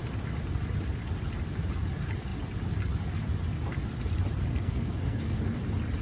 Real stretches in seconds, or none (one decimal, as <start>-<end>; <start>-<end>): 0.0-4.5; 5.4-6.0

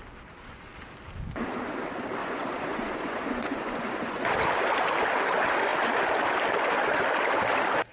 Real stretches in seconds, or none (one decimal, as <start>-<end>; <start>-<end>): 0.0-2.2; 4.3-7.9

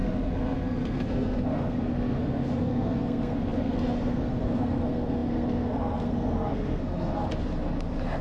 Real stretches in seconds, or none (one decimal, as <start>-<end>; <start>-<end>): 7.2-8.2

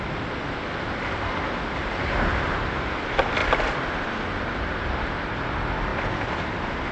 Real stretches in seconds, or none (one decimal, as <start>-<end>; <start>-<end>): 0.0-1.8; 2.7-5.9